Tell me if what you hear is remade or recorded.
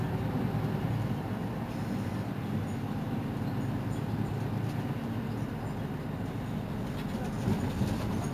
recorded